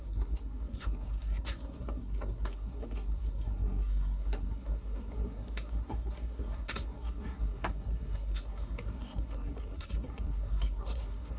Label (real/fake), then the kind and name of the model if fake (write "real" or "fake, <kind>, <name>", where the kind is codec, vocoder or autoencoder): fake, codec, SNAC